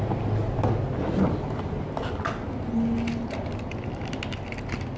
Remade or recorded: recorded